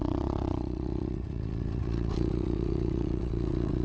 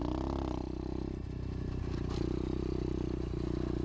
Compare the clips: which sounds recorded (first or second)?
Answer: second